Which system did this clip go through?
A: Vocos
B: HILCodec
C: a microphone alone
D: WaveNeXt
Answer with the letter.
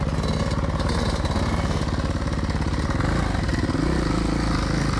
C